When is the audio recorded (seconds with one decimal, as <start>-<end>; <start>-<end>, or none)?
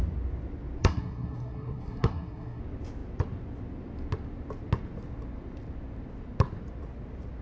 0.0-0.8; 2.6-7.4